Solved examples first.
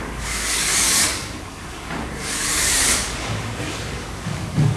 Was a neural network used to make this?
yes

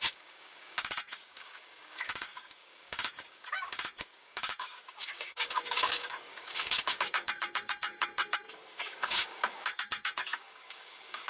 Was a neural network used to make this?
yes